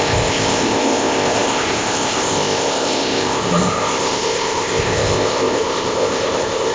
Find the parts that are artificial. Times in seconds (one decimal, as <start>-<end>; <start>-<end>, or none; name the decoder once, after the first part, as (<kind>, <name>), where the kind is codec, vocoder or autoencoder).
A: 0.0-6.7 (codec, ZipCodec)